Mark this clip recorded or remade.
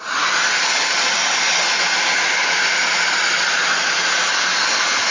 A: recorded